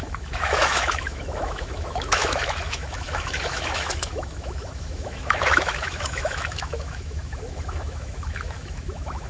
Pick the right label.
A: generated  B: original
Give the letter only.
A